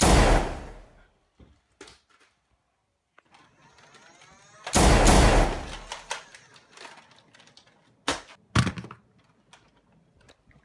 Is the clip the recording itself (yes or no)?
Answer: yes